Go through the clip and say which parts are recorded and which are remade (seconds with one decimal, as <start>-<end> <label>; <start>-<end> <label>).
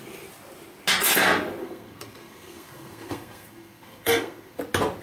0.0-1.6 recorded; 1.6-4.6 remade; 4.6-5.0 recorded